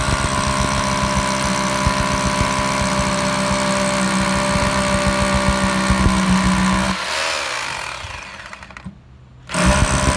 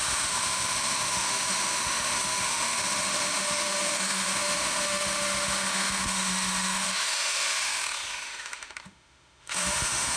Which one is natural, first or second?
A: first